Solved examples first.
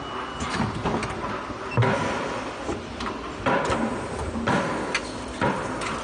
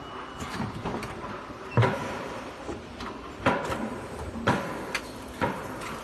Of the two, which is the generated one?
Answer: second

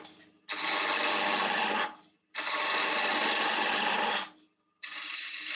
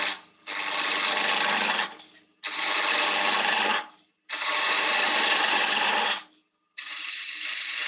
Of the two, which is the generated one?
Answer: second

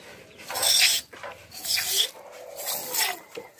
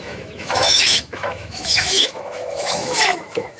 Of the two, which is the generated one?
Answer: second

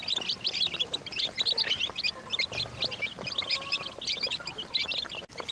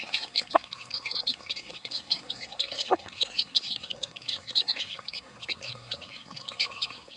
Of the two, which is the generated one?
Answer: second